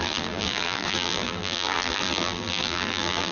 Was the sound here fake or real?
fake